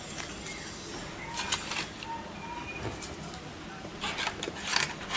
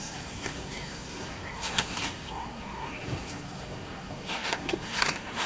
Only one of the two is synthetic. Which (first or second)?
second